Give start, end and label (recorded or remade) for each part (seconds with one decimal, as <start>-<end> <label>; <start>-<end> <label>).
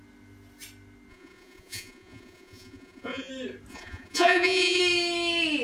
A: 0.0-1.1 recorded; 1.1-3.3 remade; 3.3-3.7 recorded; 3.7-4.8 remade; 4.8-5.6 recorded